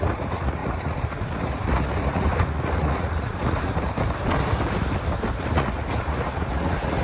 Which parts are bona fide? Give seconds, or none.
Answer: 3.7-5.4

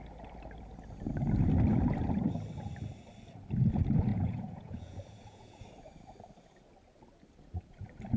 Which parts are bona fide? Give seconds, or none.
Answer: 0.0-4.1; 5.6-8.2